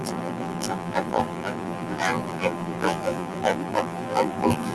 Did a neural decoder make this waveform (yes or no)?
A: yes